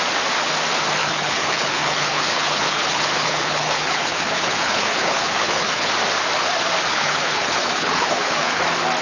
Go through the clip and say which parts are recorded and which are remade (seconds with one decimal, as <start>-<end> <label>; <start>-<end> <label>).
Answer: 0.0-1.0 recorded; 1.0-5.9 remade; 5.9-6.9 recorded; 6.9-8.6 remade; 8.6-9.0 recorded